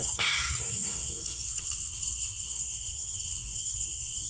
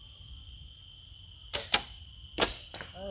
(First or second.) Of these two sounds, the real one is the second